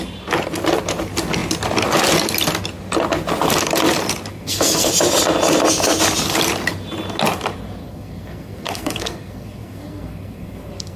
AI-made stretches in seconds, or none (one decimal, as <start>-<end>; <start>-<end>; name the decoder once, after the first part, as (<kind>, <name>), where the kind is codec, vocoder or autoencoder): 4.3-4.9 (codec, SNAC); 7.8-11.0